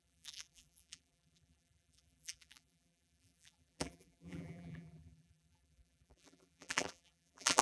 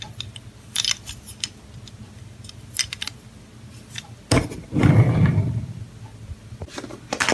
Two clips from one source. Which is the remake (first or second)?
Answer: first